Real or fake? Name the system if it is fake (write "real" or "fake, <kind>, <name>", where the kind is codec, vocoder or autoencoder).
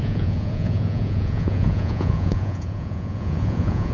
fake, vocoder, Vocos